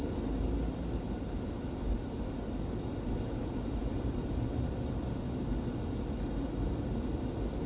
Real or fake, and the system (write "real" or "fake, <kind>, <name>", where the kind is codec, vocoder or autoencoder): real